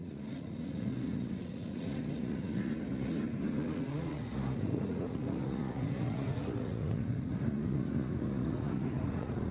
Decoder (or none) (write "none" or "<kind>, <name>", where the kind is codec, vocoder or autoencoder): vocoder, Vocos